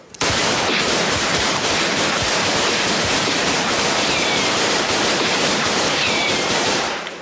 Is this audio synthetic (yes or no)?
yes